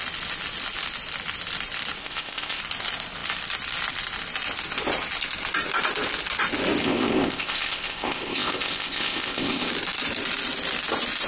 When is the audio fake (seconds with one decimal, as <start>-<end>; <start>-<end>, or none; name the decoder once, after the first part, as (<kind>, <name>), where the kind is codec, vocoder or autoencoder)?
2.0-2.6 (codec, ZipCodec); 6.8-9.7